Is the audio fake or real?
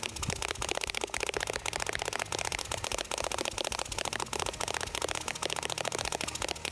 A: real